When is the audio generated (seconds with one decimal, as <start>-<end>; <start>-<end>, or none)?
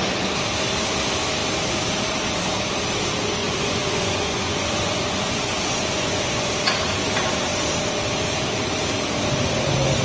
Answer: 3.4-6.5